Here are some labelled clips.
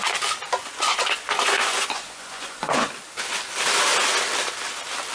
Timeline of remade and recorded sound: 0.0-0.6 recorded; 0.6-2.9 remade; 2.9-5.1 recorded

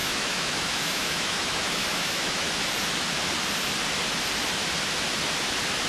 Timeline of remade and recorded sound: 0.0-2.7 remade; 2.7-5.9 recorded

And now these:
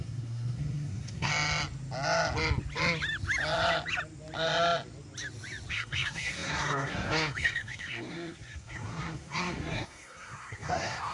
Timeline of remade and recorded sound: 0.0-1.3 remade; 1.3-5.7 recorded; 5.7-11.1 remade

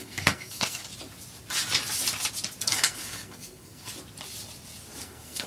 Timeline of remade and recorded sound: 0.0-0.8 remade; 0.8-2.6 recorded; 2.6-3.9 remade; 3.9-5.0 recorded; 5.0-5.5 remade

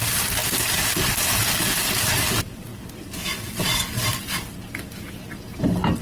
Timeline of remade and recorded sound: 0.0-6.0 recorded

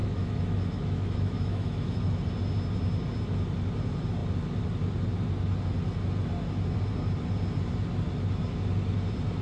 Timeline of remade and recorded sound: 0.0-2.2 remade; 2.2-9.4 recorded

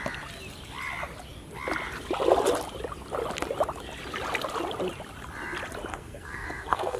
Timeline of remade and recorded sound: 0.0-5.9 recorded; 5.9-7.0 remade